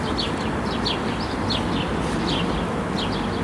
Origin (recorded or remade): recorded